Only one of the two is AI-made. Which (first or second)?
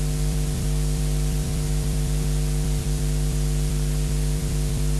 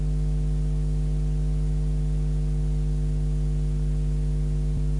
first